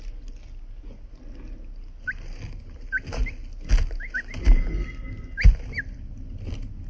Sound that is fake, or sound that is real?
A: real